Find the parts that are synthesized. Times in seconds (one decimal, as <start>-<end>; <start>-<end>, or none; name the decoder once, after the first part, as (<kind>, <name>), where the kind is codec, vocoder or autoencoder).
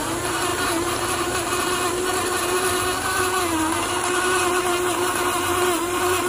none